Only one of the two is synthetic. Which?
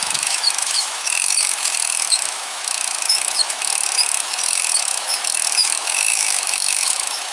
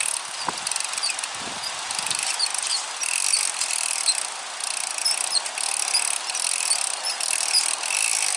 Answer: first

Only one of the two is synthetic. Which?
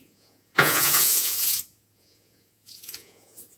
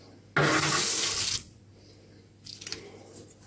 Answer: first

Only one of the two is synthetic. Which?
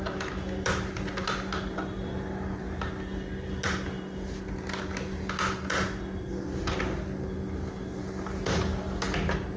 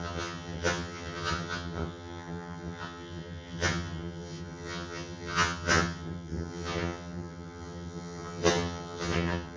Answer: second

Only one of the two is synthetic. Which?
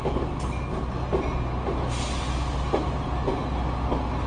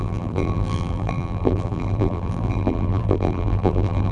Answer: second